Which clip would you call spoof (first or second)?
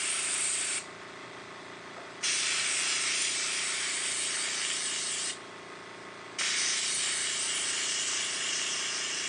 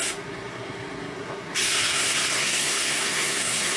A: second